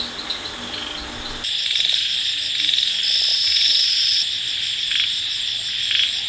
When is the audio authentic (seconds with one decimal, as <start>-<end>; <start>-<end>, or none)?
0.0-3.3; 4.5-6.3